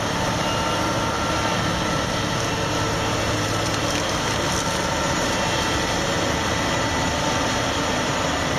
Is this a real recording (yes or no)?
yes